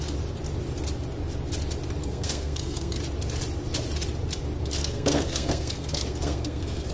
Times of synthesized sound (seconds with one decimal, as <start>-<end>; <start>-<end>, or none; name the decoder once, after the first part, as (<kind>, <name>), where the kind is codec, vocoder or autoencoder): 2.0-3.0 (codec, SNAC); 4.8-6.9